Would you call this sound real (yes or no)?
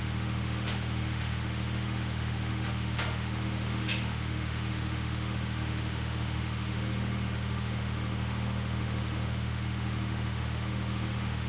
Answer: no